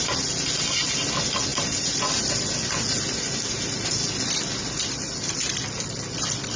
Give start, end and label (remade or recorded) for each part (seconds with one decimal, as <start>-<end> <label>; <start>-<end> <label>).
0.0-6.6 recorded